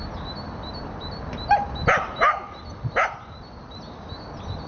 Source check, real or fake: real